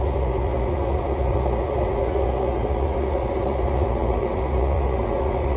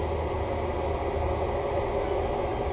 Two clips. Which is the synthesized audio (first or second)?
first